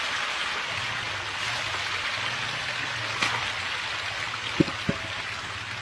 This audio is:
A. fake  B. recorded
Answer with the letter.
B